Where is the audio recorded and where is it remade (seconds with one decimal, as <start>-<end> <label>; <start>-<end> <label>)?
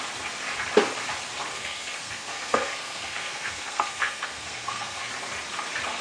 0.0-1.5 recorded; 1.5-5.1 remade; 5.1-6.0 recorded